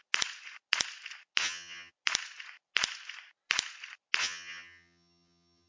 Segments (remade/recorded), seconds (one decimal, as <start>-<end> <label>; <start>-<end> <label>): 0.0-1.4 recorded; 1.4-1.9 remade; 1.9-4.2 recorded; 4.2-5.7 remade